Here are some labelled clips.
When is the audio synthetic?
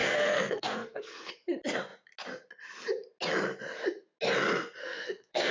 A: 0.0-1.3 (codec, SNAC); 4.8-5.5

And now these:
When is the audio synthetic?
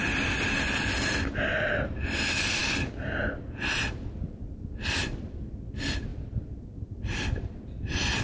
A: none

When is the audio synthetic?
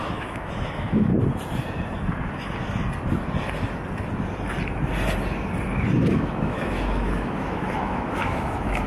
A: 0.0-1.1 (autoencoder, DAC-VAE); 6.0-8.9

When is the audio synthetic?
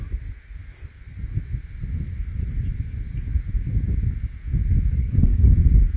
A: 5.0-5.5 (codec, SNAC)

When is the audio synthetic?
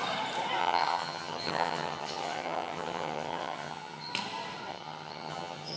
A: 0.6-4.1 (vocoder, HiFi-GAN); 4.7-5.8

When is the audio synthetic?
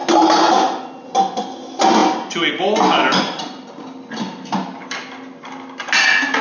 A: none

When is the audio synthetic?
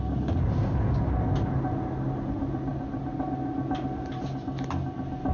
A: none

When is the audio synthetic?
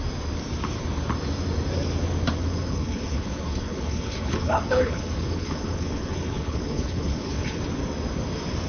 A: 2.4-7.6 (codec, HILCodec)